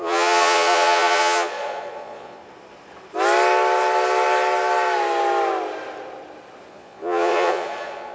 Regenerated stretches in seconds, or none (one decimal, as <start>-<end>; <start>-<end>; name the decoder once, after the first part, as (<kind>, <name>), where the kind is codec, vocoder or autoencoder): 0.0-2.4 (vocoder, Vocos); 6.7-8.1